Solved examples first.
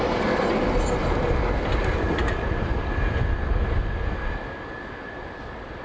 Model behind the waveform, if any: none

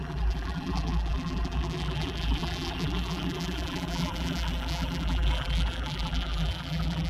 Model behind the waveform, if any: vocoder, BigVGAN v2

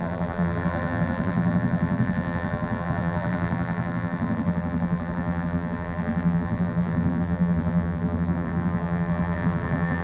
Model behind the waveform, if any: vocoder, BigVGAN v2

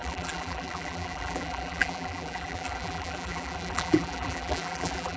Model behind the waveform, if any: vocoder, BigVGAN v2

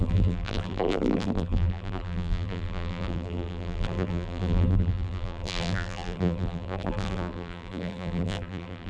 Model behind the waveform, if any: vocoder, BigVGAN v2